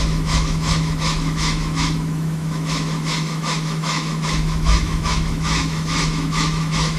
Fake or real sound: fake